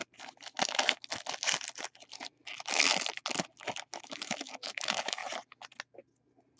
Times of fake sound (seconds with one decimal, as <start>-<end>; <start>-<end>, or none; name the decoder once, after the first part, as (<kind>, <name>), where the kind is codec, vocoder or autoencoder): 4.0-5.2 (autoencoder, DAC-VAE)